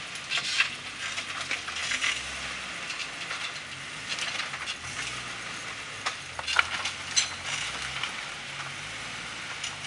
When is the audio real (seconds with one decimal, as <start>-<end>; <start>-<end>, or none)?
0.0-9.9

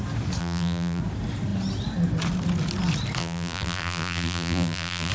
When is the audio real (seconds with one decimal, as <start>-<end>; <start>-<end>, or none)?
0.0-0.4; 1.0-3.2